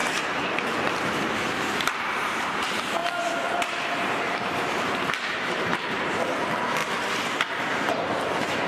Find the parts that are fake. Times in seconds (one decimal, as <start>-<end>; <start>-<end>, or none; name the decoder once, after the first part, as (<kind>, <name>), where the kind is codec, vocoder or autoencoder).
0.0-3.0 (vocoder, BigVGAN v2); 5.1-6.8; 8.1-8.7